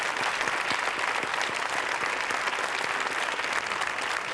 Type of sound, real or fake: real